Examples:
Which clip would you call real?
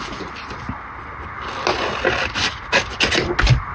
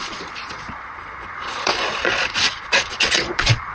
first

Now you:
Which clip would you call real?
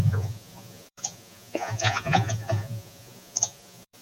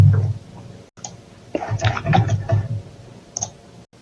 second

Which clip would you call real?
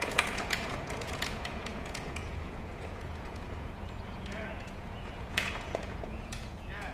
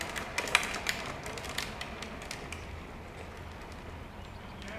second